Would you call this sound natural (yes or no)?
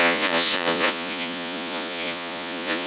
no